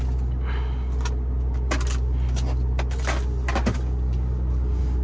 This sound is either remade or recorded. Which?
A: recorded